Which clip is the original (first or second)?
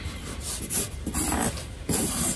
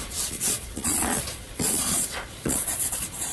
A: first